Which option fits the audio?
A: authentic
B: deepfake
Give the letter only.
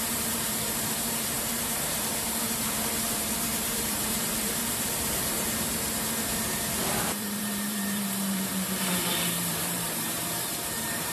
B